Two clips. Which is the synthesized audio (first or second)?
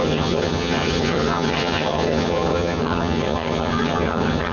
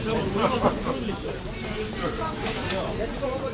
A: first